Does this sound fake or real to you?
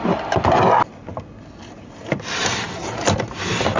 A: real